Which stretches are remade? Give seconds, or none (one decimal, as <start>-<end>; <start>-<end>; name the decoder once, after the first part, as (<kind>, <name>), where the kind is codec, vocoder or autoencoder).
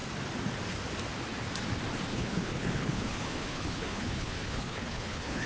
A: 2.1-5.5 (codec, HILCodec)